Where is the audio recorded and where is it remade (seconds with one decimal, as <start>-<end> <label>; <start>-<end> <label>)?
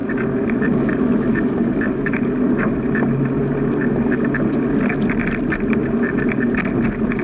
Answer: 0.0-7.2 recorded